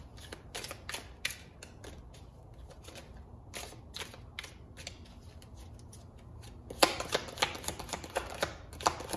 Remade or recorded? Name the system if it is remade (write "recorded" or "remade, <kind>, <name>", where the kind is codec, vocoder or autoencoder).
recorded